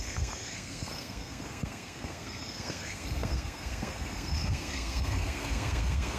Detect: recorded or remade remade